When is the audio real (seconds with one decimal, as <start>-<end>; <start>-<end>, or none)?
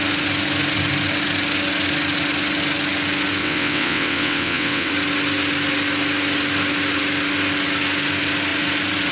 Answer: 0.0-3.4; 4.9-9.1